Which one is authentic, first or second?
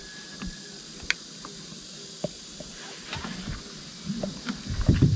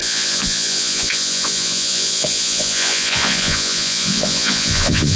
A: first